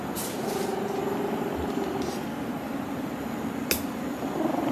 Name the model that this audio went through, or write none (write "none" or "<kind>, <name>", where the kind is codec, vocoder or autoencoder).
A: none